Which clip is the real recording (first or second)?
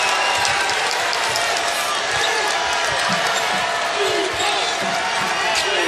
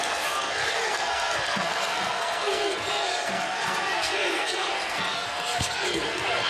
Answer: first